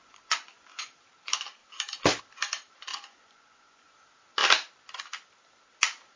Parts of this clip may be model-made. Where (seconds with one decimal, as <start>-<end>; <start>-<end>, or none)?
0.0-1.0; 2.9-3.9